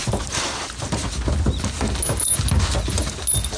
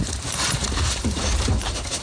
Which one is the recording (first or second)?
first